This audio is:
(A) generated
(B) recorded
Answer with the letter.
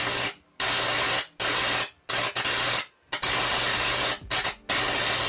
B